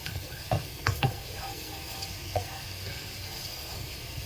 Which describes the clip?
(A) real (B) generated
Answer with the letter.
B